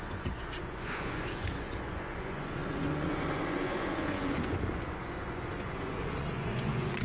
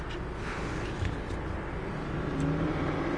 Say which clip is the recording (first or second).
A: second